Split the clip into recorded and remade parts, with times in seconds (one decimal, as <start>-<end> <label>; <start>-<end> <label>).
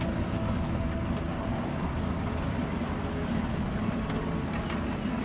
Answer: 0.0-5.2 recorded